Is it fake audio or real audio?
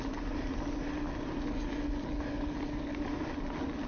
real